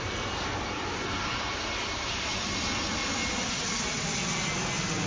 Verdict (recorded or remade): recorded